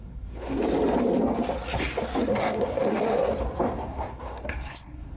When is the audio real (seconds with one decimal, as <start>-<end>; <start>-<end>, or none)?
0.6-2.3; 3.3-3.8